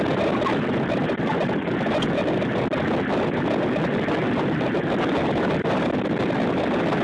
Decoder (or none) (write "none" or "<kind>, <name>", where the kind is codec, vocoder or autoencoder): none